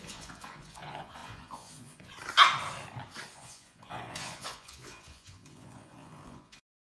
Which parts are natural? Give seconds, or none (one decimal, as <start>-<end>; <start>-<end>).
2.1-3.3